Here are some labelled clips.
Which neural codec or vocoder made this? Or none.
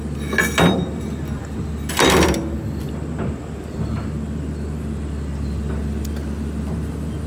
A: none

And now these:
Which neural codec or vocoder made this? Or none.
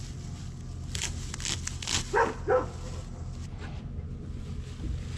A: none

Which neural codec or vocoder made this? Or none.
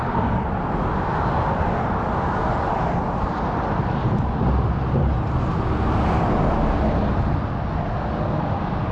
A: none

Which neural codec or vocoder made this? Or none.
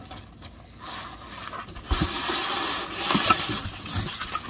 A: none